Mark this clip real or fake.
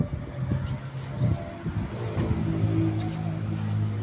real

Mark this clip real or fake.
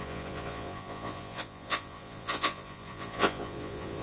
fake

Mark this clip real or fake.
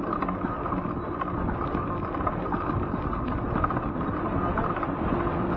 real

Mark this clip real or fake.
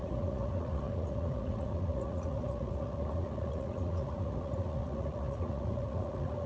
fake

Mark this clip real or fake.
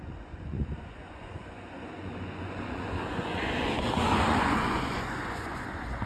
fake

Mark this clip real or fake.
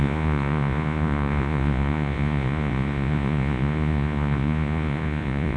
fake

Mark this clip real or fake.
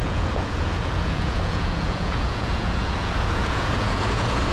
fake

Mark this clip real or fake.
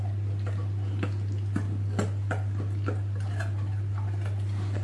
real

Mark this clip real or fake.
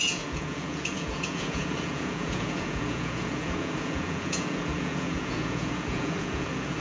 fake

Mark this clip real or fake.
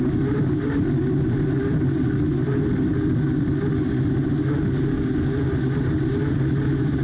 real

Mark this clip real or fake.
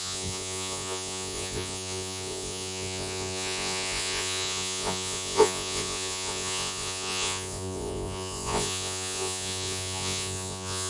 fake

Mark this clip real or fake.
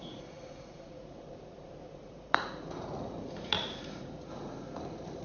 fake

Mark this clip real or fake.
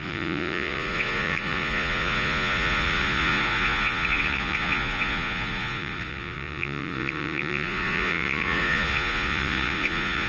fake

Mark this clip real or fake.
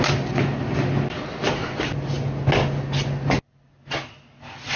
real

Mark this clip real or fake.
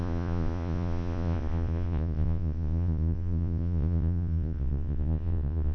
fake